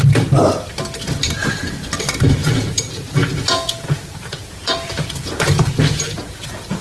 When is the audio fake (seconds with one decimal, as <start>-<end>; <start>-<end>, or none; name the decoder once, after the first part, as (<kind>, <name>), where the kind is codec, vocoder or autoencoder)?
2.4-6.8 (vocoder, Vocos)